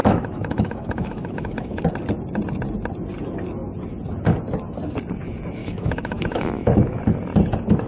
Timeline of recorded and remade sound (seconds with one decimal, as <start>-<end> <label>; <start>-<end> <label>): 0.0-1.8 remade; 1.8-5.6 recorded; 5.6-7.0 remade; 7.0-7.9 recorded